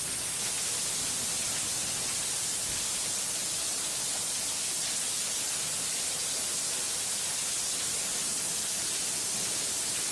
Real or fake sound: real